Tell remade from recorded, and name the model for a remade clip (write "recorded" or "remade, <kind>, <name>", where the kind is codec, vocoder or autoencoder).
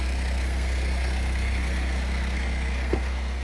remade, codec, SNAC